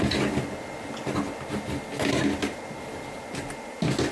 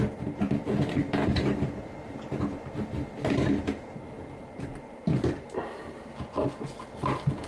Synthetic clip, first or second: second